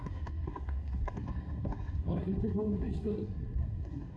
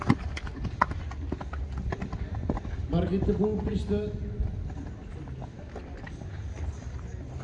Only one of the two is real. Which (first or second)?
second